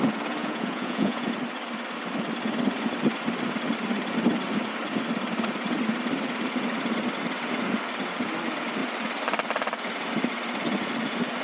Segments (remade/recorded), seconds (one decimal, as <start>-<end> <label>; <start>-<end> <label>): 0.0-0.4 recorded; 0.4-1.3 remade; 1.3-11.4 recorded